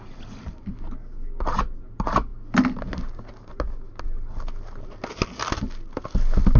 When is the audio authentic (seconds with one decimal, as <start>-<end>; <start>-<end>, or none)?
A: 0.0-6.6